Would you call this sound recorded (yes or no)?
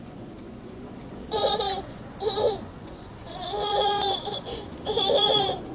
no